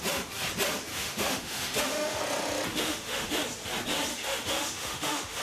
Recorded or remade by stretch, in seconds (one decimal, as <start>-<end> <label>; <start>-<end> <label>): 0.0-0.9 recorded; 0.9-2.2 remade; 2.2-2.7 recorded; 2.7-3.4 remade; 3.4-4.1 recorded; 4.1-5.4 remade